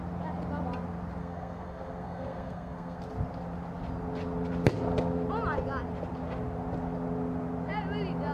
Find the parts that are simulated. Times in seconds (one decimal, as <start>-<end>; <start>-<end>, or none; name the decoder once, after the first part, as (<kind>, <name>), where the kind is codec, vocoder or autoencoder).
1.2-3.0 (codec, SNAC)